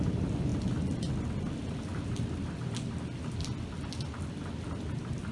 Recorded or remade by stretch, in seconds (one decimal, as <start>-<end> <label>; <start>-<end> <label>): 0.0-5.3 recorded